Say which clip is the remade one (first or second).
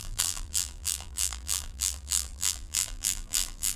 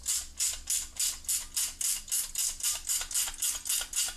first